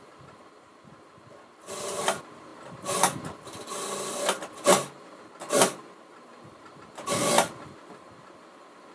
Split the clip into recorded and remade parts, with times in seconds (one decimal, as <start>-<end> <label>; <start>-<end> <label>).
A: 0.0-8.9 recorded